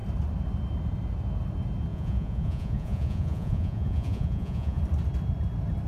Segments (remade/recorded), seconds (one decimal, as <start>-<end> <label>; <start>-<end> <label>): 0.0-1.9 recorded; 1.9-4.8 remade; 4.8-5.9 recorded